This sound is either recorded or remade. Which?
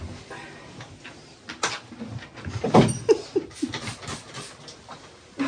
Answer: recorded